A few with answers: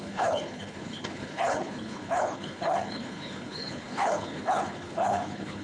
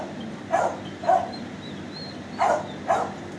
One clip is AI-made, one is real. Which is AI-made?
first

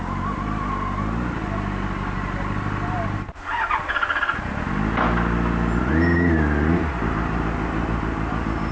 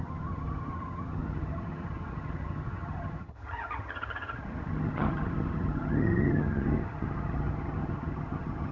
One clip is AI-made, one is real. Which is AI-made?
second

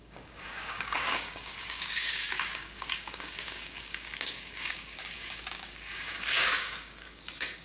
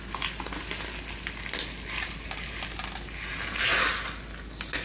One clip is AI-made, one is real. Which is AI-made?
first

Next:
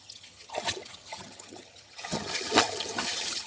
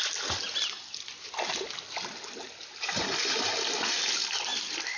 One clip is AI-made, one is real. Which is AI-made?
first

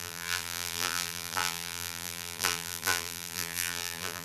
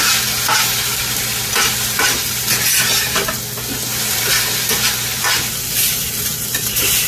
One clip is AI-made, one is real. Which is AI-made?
first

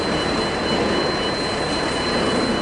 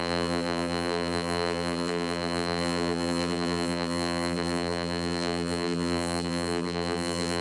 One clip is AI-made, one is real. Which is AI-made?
second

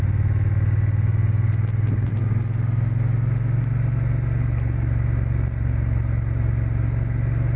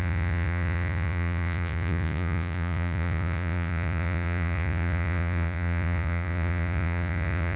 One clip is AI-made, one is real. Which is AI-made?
second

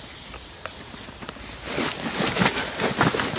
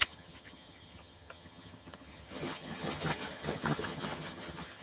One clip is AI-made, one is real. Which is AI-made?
second